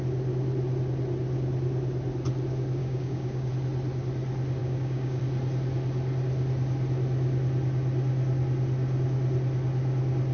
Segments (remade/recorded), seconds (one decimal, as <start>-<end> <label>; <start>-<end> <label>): 0.0-2.8 recorded; 2.8-3.5 remade; 3.5-4.6 recorded; 4.6-5.2 remade; 5.2-10.3 recorded